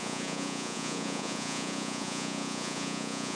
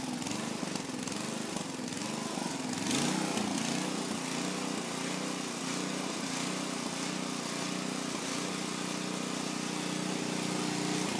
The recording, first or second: second